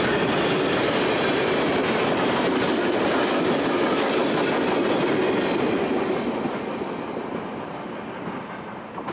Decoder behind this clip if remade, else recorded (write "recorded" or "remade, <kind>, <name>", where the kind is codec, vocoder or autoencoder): recorded